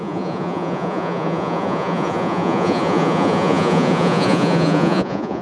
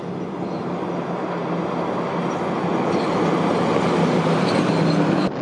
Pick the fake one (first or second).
first